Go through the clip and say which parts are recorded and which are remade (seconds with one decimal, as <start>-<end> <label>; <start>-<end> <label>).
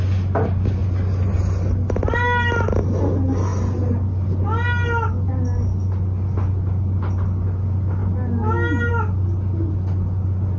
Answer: 0.0-10.6 recorded